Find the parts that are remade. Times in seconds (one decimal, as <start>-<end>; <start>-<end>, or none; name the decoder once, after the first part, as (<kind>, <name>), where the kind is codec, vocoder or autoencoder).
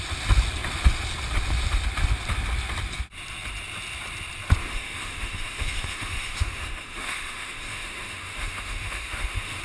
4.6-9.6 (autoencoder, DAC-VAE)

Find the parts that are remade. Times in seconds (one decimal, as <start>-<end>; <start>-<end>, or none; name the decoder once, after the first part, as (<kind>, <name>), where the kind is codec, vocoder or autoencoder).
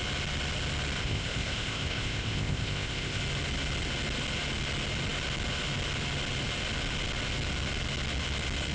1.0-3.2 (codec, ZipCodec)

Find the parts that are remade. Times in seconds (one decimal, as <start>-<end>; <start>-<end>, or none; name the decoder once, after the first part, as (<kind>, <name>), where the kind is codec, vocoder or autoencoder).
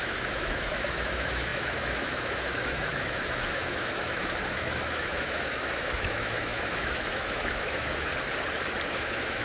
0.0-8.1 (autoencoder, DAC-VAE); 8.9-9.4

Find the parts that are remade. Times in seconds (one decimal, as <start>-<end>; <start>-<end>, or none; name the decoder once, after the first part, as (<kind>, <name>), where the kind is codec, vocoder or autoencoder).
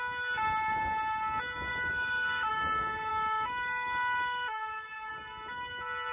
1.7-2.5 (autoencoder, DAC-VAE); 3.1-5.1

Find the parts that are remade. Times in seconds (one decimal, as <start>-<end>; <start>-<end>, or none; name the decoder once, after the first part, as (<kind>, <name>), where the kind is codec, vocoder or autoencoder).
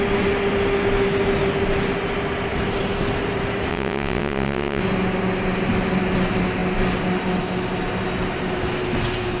3.7-4.8 (vocoder, WaveNeXt)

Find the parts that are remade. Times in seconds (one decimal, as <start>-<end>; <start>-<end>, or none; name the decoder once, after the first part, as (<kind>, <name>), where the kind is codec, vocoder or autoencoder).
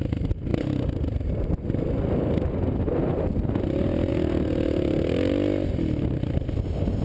none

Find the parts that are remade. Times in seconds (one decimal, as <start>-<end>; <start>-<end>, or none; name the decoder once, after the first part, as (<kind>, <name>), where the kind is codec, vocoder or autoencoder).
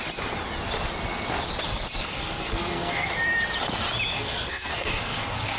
2.0-3.1 (codec, SNAC); 4.1-5.6